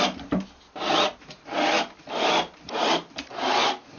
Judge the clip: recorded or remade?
recorded